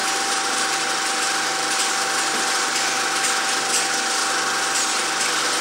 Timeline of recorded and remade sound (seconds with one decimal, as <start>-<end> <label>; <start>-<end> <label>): 0.0-1.9 remade; 1.9-5.6 recorded